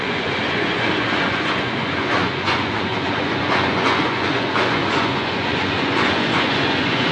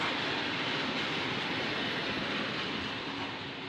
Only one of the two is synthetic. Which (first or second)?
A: first